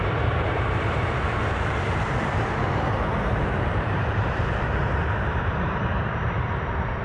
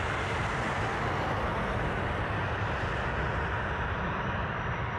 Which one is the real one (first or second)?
second